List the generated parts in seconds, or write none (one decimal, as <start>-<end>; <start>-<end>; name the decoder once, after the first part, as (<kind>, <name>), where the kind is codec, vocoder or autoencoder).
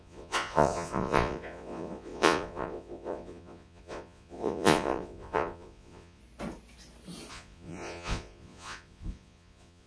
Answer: 0.0-6.2 (vocoder, Vocos); 7.3-9.9